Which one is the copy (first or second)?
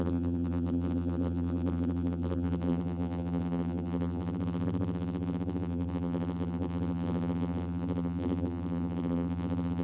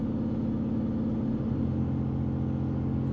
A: first